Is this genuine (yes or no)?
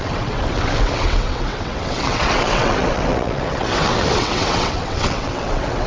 no